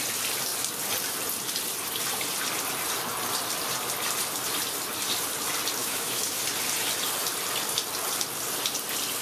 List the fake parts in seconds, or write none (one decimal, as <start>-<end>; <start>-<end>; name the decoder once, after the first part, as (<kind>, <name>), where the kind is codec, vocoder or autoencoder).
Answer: 5.8-6.4 (autoencoder, DAC-VAE)